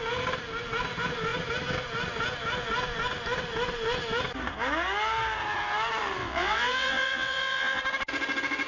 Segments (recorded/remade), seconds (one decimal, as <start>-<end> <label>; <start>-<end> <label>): 0.0-6.2 recorded; 6.2-7.8 remade; 7.8-8.7 recorded